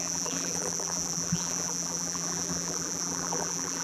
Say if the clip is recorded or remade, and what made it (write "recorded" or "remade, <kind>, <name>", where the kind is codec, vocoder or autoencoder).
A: remade, vocoder, BigVGAN v2